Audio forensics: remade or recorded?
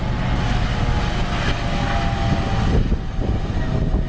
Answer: recorded